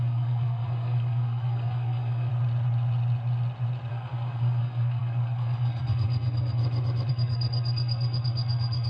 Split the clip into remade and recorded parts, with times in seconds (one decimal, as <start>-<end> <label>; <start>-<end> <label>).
0.0-2.3 remade; 2.3-3.9 recorded; 3.9-6.6 remade; 6.6-7.1 recorded; 7.1-8.9 remade